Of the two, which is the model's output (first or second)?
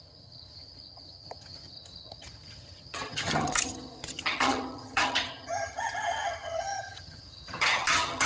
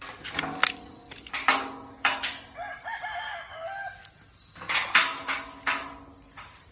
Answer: first